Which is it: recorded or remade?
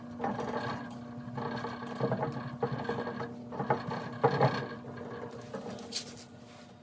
recorded